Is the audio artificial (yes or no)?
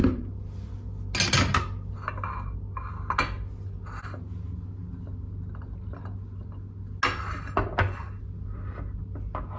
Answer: no